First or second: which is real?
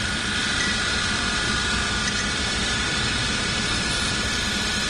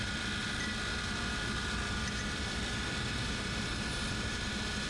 second